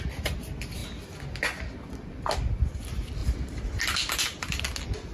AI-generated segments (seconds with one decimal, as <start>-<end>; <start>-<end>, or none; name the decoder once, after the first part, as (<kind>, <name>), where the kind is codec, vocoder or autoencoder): none